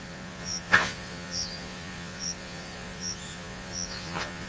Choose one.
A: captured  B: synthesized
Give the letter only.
B